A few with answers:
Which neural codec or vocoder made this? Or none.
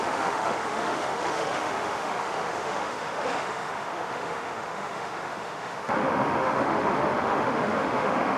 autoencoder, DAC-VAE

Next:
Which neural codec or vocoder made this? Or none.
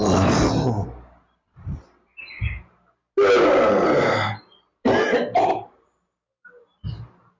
none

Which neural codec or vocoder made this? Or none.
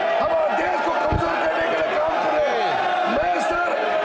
none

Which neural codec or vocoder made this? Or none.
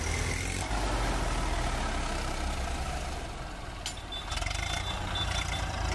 none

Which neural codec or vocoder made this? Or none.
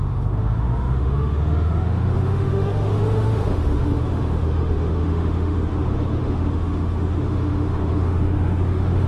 autoencoder, DAC-VAE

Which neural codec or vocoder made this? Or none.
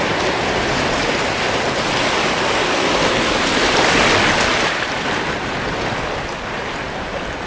none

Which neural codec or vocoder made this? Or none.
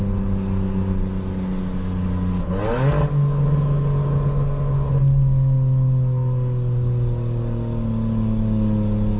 none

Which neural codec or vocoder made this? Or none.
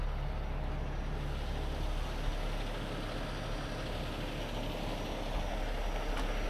none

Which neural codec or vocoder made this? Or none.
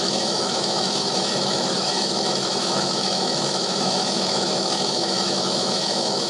autoencoder, DAC-VAE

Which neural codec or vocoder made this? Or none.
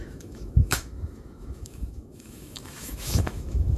autoencoder, DAC-VAE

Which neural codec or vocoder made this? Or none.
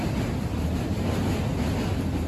none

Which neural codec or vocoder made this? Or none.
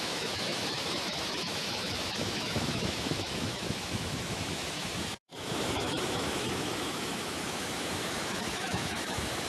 autoencoder, DAC-VAE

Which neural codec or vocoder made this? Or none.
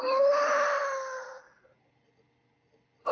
none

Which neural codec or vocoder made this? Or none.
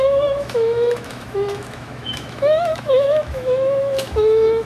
autoencoder, DAC-VAE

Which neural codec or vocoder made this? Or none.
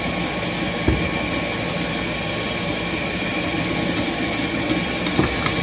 none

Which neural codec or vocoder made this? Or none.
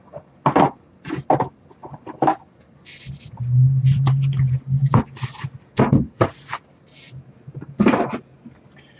none